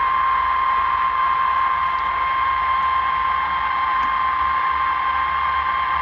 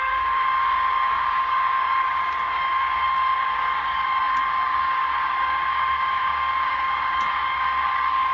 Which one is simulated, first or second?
second